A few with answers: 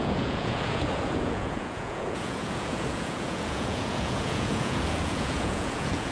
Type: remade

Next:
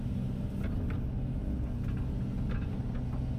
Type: recorded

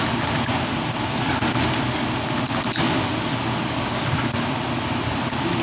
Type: recorded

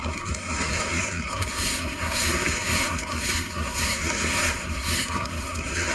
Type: remade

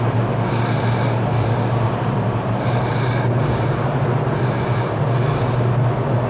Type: recorded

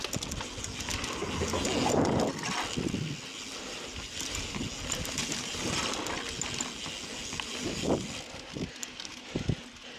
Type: recorded